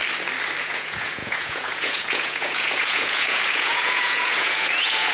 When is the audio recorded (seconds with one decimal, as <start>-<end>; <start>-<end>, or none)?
0.0-0.6

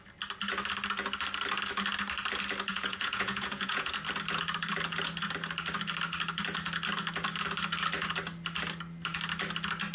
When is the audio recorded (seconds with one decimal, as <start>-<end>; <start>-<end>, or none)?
0.0-2.7; 3.9-9.9

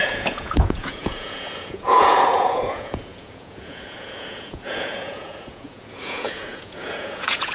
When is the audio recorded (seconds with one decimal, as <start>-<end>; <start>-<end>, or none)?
none

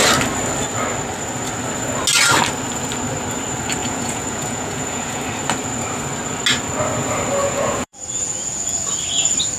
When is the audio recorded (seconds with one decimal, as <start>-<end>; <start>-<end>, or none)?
0.0-3.8; 5.2-7.4; 8.9-9.6

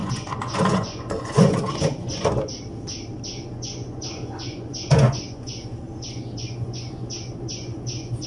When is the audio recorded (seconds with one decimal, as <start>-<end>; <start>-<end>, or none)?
2.5-3.3

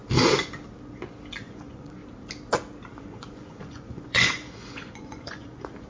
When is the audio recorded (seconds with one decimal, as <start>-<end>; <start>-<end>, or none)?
0.0-1.3; 2.0-3.0

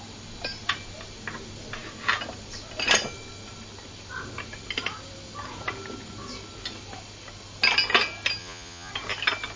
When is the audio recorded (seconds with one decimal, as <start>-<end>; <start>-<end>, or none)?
0.0-8.4; 8.9-9.6